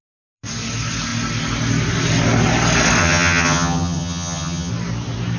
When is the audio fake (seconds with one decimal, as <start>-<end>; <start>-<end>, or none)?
3.0-4.7